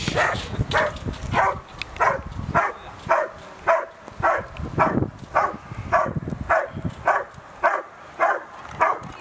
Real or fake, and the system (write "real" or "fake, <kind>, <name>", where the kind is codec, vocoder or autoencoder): real